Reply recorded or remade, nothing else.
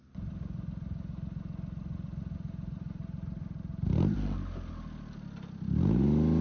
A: recorded